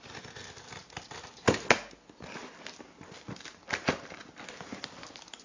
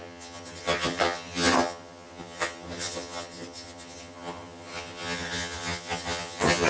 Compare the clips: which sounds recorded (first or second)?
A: first